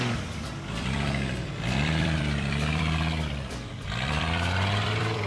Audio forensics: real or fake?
fake